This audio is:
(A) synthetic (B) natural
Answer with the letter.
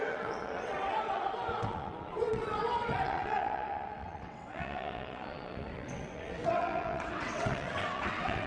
A